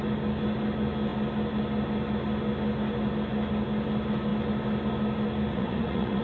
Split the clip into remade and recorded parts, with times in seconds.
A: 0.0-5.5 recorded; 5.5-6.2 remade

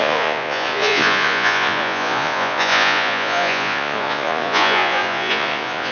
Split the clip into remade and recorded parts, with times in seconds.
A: 0.0-5.9 remade

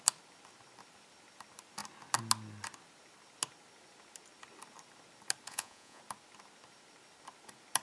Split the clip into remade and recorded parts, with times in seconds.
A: 0.0-5.5 recorded; 5.5-6.0 remade; 6.0-7.8 recorded

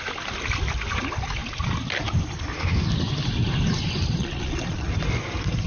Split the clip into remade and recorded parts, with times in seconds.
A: 0.0-4.2 recorded; 4.2-4.9 remade; 4.9-5.7 recorded